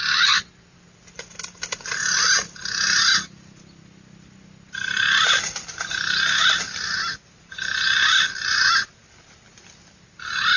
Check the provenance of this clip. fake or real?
real